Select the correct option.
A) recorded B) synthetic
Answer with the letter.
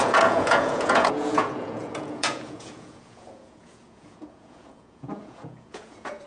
B